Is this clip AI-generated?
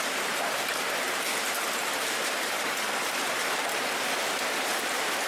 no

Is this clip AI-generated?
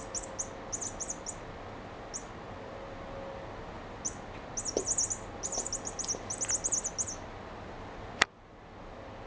no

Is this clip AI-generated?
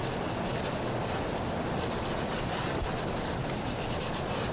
no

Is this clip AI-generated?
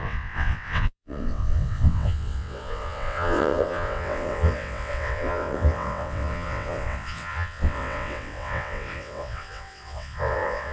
yes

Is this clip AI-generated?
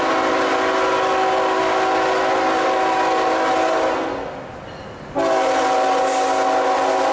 no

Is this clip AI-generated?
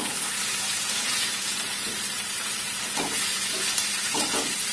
yes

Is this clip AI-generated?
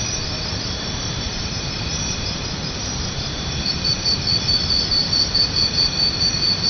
yes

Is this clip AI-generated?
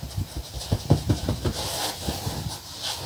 no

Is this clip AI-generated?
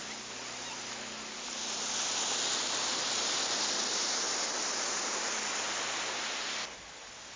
no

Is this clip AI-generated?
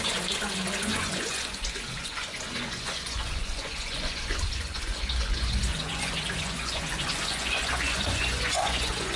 yes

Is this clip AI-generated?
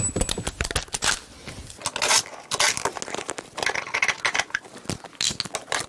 no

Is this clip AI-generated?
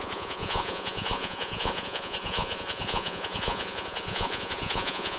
yes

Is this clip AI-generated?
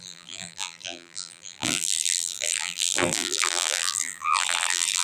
yes